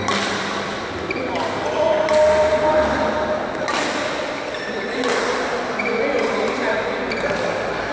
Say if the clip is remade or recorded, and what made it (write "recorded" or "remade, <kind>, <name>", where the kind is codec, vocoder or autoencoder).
recorded